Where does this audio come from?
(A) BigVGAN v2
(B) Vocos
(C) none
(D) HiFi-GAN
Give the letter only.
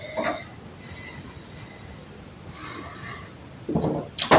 C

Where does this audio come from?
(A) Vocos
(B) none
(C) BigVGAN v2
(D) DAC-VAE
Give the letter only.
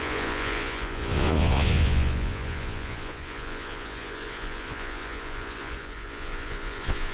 A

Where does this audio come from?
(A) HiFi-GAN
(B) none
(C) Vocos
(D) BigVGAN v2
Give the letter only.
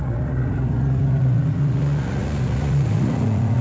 C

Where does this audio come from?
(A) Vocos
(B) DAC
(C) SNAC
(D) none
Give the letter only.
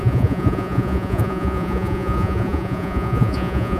A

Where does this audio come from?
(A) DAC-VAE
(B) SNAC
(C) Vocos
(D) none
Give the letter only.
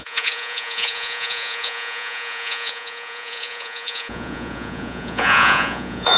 C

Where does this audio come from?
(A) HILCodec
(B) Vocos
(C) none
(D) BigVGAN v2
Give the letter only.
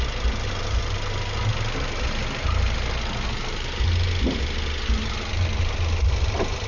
C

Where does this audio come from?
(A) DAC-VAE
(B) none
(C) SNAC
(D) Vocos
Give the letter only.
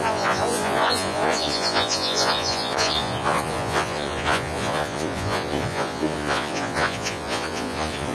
D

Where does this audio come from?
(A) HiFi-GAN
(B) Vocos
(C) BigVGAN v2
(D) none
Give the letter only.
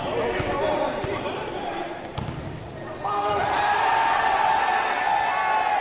D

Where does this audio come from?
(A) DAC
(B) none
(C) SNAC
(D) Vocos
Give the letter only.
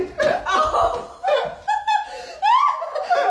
B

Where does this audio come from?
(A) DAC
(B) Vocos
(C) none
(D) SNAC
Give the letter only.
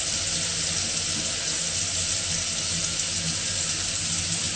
C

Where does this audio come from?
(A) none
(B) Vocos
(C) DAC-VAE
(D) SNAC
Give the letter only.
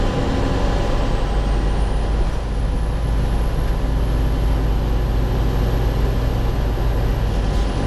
A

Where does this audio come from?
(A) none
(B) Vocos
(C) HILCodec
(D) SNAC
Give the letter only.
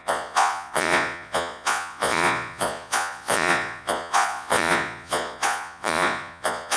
B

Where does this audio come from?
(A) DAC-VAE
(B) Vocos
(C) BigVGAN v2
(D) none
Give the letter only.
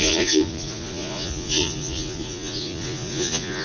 B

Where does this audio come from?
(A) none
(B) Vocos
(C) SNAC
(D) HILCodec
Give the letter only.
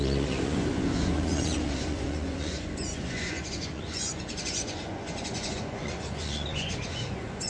B